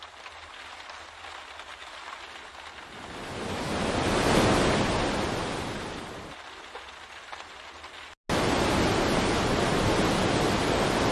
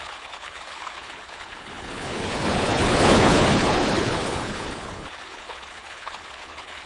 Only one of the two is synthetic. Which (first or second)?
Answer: second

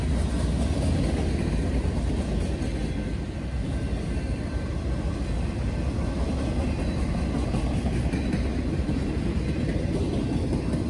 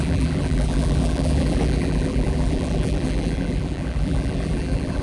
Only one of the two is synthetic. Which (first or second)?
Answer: second